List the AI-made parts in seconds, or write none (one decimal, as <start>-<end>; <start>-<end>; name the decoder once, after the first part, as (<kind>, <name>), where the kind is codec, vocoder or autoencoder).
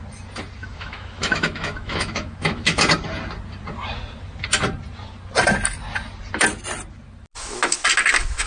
0.6-2.8 (autoencoder, DAC-VAE)